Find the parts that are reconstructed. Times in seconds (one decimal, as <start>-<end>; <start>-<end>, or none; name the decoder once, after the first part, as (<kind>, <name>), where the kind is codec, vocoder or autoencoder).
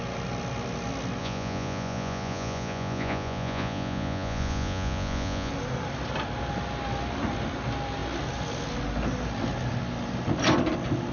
1.2-5.5 (vocoder, Vocos)